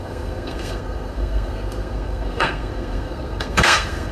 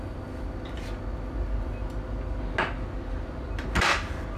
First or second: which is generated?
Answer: first